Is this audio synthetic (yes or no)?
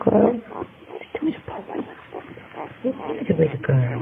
no